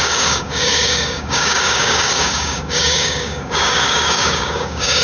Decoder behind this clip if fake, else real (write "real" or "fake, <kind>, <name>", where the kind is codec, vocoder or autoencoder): fake, codec, DAC